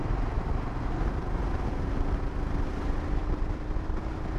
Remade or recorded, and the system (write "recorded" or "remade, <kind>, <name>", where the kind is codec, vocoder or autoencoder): recorded